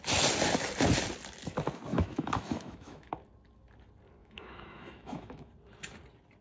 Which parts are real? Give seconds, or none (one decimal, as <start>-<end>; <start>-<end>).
0.0-1.9; 3.1-4.2; 5.5-6.4